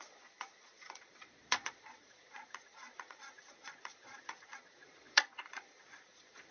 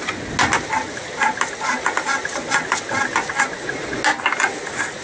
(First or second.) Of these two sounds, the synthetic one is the first